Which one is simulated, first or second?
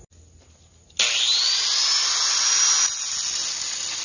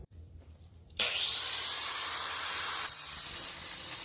second